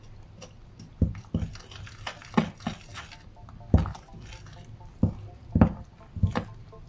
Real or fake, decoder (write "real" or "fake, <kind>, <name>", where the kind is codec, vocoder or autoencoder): real